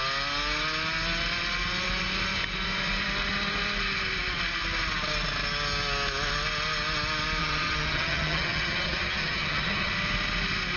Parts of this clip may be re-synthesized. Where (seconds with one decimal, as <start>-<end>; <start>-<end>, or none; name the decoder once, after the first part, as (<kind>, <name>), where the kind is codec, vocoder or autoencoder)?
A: 7.4-9.9 (vocoder, HiFi-GAN)